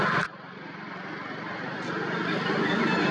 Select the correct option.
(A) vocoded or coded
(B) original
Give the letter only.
B